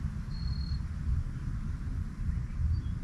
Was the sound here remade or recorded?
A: recorded